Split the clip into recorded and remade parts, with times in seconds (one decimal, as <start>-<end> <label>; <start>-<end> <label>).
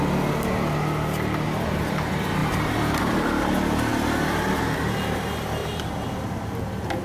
0.0-5.6 recorded; 5.6-6.6 remade; 6.6-7.0 recorded